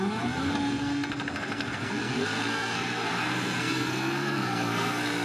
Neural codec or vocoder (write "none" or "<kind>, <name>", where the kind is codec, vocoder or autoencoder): codec, SNAC